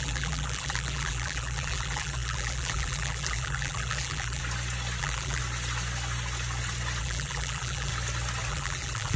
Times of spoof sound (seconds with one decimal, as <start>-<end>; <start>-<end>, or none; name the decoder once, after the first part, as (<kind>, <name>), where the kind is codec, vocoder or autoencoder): 0.0-4.4 (vocoder, BigVGAN v2); 5.0-5.4; 7.0-7.9; 8.5-9.2